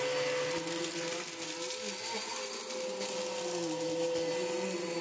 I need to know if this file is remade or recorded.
recorded